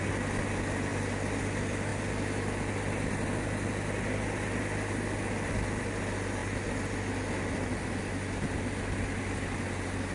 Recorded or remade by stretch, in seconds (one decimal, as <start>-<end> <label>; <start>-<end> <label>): 0.0-10.1 recorded